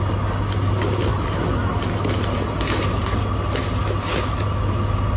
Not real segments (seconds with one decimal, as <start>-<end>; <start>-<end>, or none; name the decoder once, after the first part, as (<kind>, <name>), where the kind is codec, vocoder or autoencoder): none